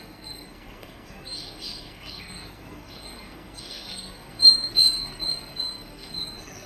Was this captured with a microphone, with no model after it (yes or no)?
no